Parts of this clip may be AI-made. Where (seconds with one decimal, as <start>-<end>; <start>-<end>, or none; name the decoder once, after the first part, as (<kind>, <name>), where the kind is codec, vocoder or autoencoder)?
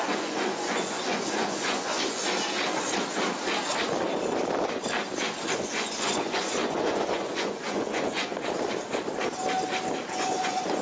0.0-2.2 (vocoder, Vocos); 5.5-8.3; 10.1-10.8